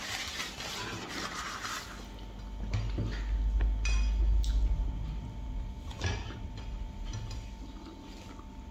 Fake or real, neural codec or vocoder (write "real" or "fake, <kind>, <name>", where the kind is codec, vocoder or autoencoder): real